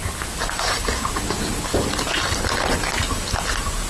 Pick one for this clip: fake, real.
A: real